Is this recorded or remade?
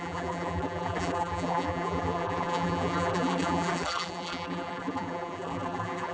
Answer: remade